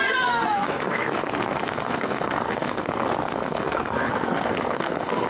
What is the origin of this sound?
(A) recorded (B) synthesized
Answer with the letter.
B